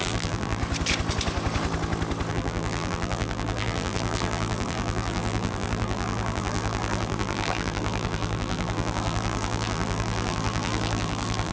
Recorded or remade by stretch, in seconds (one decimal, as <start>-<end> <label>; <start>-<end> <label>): 0.0-0.6 remade; 0.6-2.3 recorded; 2.3-11.5 remade